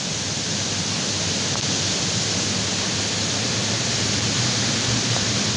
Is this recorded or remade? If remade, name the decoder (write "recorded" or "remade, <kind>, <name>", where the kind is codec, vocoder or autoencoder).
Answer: recorded